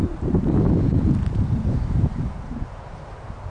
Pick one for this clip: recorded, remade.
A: remade